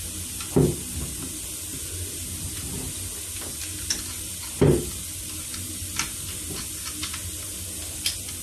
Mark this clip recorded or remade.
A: recorded